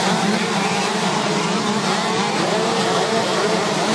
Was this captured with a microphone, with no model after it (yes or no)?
yes